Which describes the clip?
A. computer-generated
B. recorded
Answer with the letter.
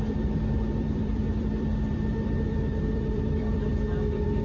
A